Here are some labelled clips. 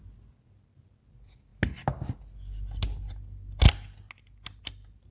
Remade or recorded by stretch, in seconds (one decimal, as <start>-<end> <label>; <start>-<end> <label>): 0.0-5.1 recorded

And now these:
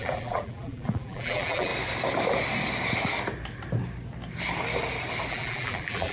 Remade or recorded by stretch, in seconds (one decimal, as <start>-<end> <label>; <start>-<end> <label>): 0.0-1.7 remade; 1.7-5.3 recorded; 5.3-6.1 remade

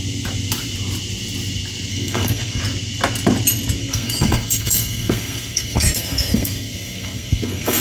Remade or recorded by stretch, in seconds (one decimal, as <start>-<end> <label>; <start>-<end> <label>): 0.0-1.9 recorded; 1.9-2.6 remade; 2.6-3.8 recorded; 3.8-7.8 remade